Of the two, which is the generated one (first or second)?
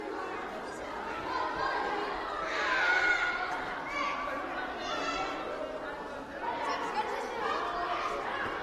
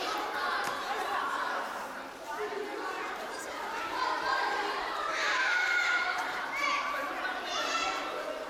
second